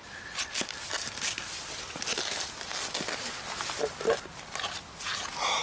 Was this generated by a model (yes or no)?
no